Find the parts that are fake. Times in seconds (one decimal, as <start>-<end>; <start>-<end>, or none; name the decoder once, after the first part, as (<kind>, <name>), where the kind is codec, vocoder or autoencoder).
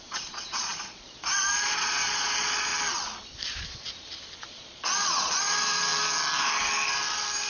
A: 0.0-2.7 (vocoder, Vocos); 4.4-5.9